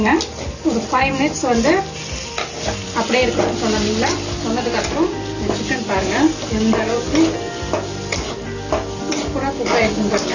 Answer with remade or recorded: recorded